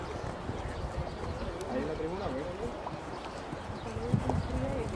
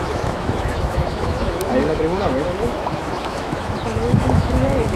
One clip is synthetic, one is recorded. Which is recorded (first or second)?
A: first